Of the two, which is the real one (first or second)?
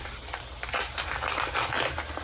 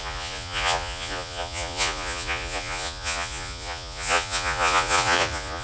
first